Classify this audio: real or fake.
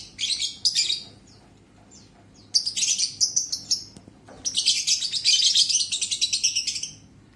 real